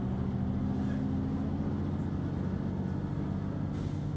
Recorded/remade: recorded